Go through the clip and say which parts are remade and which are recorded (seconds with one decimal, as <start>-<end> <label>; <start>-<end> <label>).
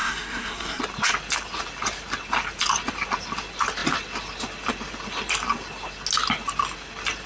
0.0-0.8 remade; 0.8-7.3 recorded